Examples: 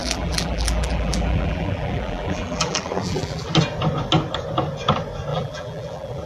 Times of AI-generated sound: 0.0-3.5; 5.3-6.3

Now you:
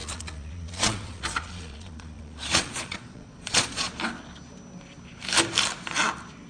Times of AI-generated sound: 0.0-3.9

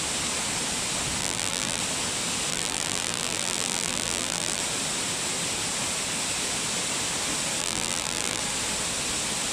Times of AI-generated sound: 1.2-1.8; 2.5-4.6; 7.6-8.4

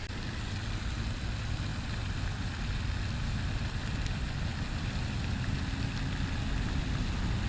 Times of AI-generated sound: none

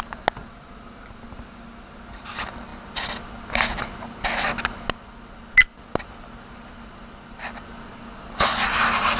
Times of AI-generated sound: none